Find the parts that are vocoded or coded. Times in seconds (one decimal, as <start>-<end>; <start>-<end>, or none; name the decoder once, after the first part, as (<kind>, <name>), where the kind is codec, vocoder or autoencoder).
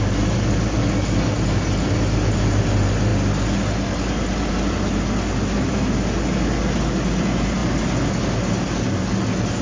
none